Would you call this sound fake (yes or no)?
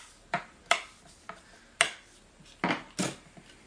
no